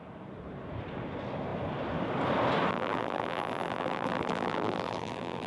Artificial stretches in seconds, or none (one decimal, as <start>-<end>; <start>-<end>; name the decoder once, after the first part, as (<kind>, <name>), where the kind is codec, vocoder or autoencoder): 2.7-5.5 (vocoder, BigVGAN v2)